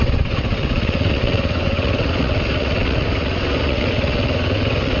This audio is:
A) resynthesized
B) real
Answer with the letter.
A